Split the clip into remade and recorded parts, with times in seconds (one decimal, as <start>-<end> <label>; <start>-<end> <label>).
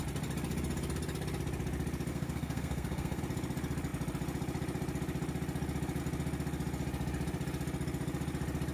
0.0-2.1 recorded; 2.1-3.2 remade; 3.2-8.7 recorded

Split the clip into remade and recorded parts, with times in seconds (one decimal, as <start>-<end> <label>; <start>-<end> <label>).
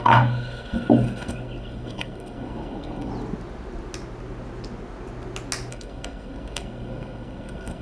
0.0-3.1 remade; 3.1-5.7 recorded; 5.7-7.8 remade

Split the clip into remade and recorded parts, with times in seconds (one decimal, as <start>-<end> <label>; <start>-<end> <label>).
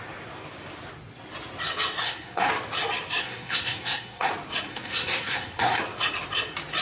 0.0-2.0 recorded; 2.0-2.5 remade; 2.5-3.2 recorded; 3.2-4.3 remade; 4.3-4.7 recorded; 4.7-5.8 remade; 5.8-6.8 recorded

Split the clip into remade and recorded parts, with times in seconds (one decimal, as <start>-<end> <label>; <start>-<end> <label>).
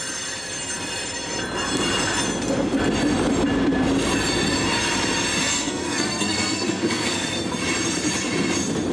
0.0-5.4 recorded; 5.4-7.5 remade; 7.5-8.9 recorded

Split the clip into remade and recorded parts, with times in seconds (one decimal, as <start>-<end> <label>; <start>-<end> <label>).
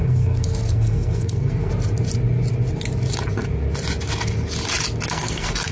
0.0-1.7 remade; 1.7-5.1 recorded; 5.1-5.7 remade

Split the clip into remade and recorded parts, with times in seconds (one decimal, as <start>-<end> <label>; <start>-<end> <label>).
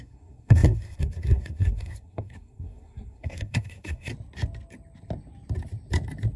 0.0-4.1 remade; 4.1-6.4 recorded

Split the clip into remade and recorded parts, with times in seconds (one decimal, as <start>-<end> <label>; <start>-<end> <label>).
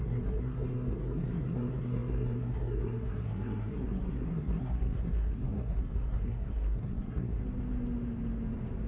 0.0-7.4 remade; 7.4-8.9 recorded